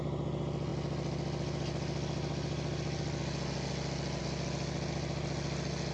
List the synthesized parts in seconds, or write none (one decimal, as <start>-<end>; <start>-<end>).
none